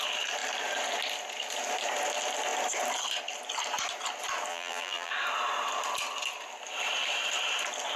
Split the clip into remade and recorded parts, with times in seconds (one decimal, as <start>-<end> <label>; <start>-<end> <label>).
0.0-4.5 recorded; 4.5-5.1 remade; 5.1-8.0 recorded